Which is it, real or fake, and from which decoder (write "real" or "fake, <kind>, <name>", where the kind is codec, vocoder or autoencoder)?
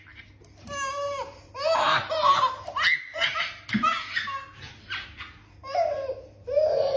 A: real